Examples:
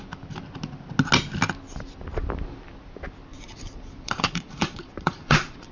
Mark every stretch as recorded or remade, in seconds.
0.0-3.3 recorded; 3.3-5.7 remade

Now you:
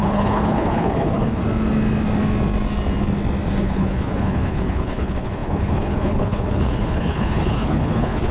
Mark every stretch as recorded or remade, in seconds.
0.0-1.4 remade; 1.4-3.6 recorded; 3.6-8.3 remade

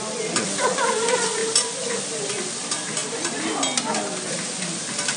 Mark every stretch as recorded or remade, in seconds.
0.0-5.2 recorded

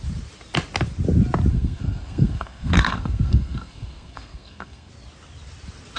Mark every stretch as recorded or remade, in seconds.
0.0-1.5 recorded; 1.5-4.9 remade; 4.9-6.0 recorded